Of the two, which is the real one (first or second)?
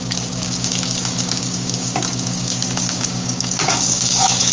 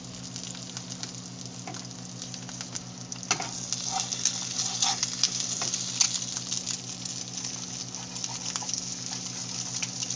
second